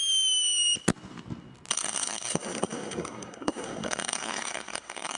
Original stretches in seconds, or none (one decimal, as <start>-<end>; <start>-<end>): 0.0-1.7